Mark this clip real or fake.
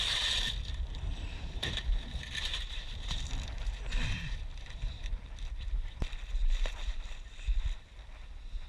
fake